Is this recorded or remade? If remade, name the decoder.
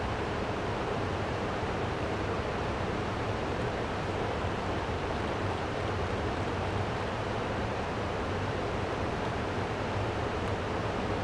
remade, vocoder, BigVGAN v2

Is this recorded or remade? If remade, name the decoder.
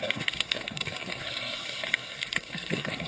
remade, codec, SNAC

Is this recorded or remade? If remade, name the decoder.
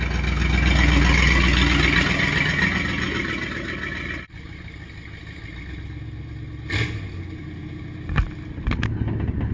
recorded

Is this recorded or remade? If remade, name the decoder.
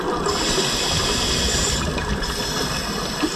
recorded